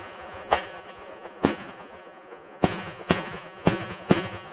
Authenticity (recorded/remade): remade